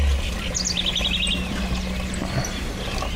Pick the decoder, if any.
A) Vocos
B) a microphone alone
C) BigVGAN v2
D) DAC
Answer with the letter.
B